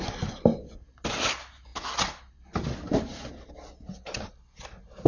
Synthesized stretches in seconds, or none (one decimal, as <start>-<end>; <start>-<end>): none